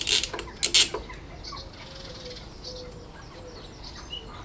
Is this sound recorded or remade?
recorded